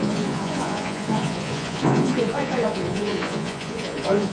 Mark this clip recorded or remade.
remade